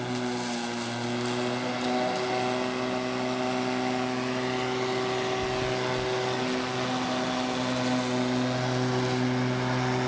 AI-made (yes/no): no